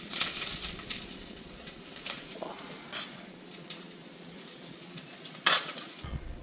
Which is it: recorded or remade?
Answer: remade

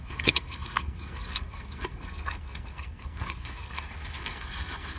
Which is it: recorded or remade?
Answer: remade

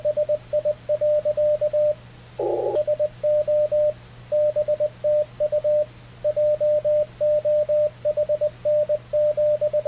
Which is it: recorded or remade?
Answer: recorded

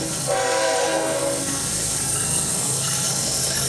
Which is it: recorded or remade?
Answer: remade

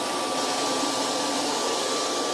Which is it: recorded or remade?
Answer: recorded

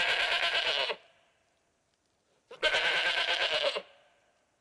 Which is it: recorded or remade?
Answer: recorded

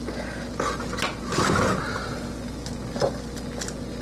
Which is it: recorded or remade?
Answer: recorded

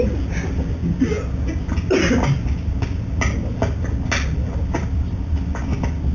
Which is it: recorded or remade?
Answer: recorded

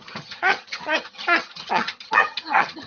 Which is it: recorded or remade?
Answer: remade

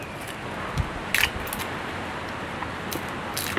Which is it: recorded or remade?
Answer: recorded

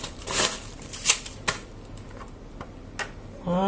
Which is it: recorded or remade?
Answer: recorded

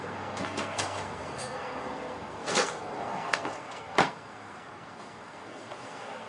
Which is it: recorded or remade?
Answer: remade